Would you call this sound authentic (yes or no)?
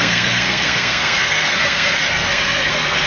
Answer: no